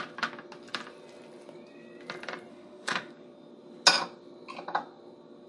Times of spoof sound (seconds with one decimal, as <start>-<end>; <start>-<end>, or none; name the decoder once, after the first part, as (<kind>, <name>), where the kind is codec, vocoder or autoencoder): 2.5-3.1 (autoencoder, DAC-VAE)